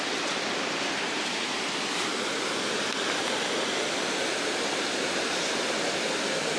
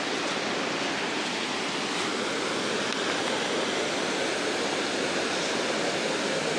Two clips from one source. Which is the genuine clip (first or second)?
second